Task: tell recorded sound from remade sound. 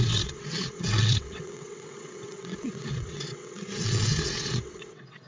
remade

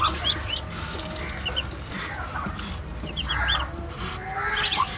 recorded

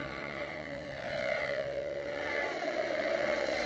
remade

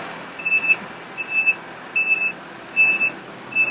recorded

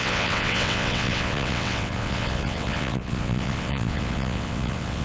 remade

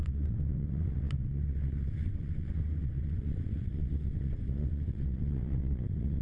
remade